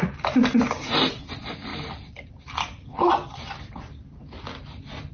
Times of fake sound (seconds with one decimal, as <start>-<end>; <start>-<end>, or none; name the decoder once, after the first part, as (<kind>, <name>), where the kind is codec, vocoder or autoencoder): none